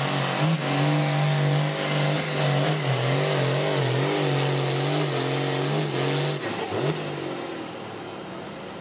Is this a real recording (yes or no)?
yes